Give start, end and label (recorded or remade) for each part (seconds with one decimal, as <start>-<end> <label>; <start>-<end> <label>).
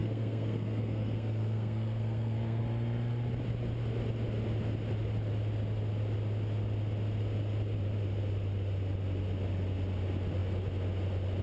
0.0-2.6 remade; 2.6-11.4 recorded